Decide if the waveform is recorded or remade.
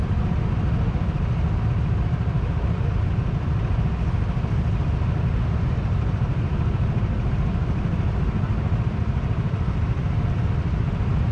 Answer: recorded